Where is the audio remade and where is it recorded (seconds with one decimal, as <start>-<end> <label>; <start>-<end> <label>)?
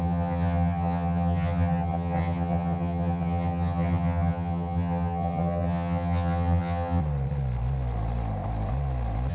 0.0-7.0 remade; 7.0-9.3 recorded